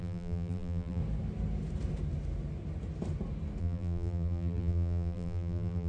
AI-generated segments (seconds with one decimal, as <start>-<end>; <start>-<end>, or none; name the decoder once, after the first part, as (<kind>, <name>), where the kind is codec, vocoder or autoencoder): 0.0-1.0 (vocoder, BigVGAN v2); 3.6-5.9